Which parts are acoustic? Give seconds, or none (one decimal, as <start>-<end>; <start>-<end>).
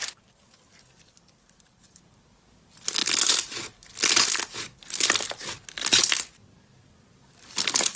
2.0-8.0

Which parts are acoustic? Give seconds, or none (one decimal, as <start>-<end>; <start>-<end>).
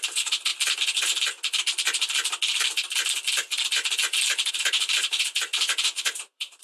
0.5-4.5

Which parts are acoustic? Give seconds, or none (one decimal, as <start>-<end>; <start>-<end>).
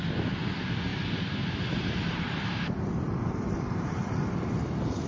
0.0-0.9; 4.0-5.1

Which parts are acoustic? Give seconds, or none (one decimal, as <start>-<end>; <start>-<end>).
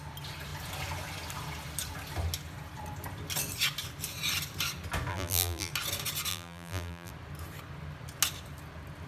0.0-5.1; 5.7-6.3; 7.1-9.1